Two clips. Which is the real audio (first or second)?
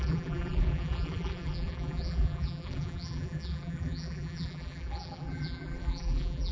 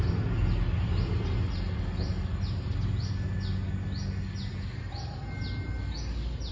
second